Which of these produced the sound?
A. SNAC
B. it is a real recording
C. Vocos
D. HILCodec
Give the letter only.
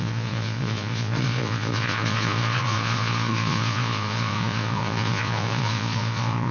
C